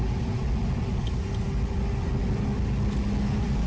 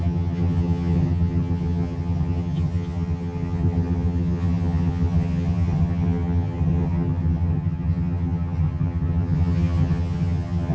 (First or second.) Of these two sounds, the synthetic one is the second